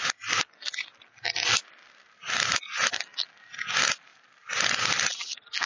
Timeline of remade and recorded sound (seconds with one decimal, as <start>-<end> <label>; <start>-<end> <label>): 0.0-5.7 recorded

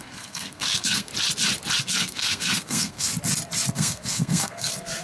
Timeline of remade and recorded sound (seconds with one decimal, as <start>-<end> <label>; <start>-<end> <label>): 0.0-1.1 remade; 1.1-1.8 recorded; 1.8-3.1 remade; 3.1-3.7 recorded; 3.7-5.0 remade

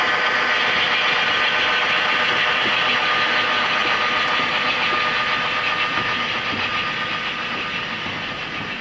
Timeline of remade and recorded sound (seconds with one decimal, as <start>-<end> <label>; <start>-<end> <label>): 0.0-8.8 recorded

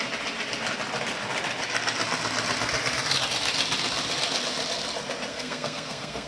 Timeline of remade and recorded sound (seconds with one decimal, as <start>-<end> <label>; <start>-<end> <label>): 0.0-5.3 recorded; 5.3-6.3 remade